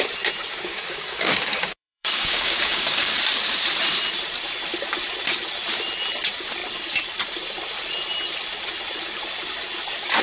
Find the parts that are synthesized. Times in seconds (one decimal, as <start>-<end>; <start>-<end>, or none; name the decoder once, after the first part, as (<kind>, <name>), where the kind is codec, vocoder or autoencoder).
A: 0.7-3.1 (codec, DAC)